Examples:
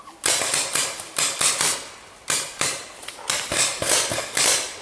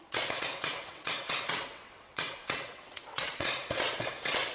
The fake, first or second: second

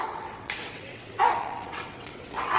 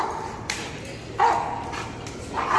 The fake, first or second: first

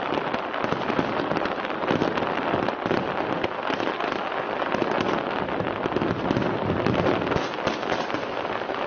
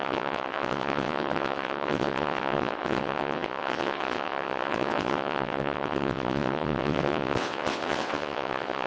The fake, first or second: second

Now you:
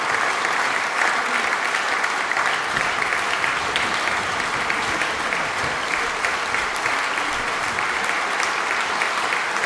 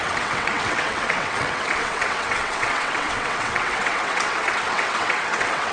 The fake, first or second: second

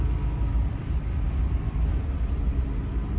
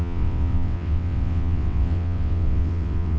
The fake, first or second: second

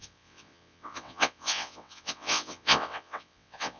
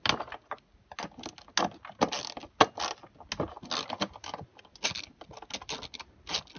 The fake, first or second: first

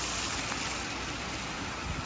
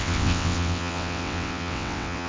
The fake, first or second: second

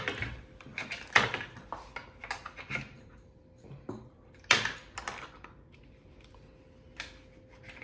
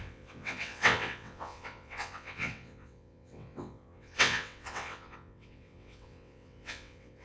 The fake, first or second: second